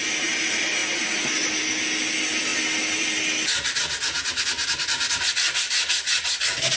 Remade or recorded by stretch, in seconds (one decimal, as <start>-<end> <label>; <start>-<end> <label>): 0.0-6.8 recorded